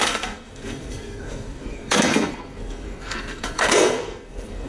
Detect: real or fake fake